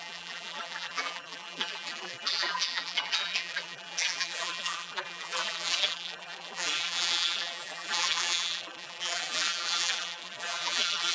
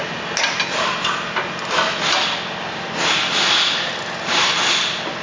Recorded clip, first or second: second